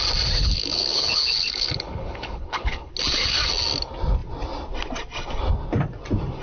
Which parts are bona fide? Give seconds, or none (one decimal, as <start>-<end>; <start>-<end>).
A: 0.0-0.4; 2.9-6.4